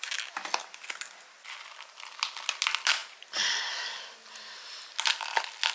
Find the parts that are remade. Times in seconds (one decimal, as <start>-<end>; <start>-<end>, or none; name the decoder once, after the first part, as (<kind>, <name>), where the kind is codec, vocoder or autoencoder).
none